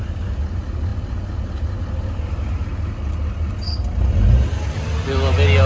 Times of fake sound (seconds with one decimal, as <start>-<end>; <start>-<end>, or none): none